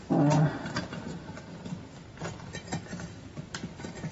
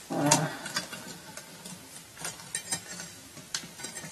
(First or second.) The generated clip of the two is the first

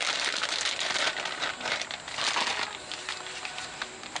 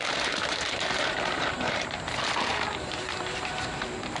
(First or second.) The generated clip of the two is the second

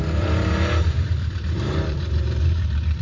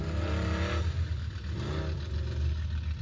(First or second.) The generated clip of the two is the first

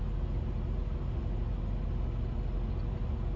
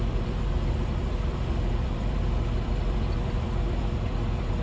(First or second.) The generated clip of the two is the second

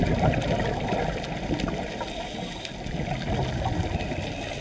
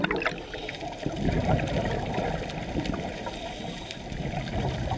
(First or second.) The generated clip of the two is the second